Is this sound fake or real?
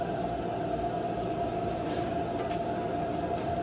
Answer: real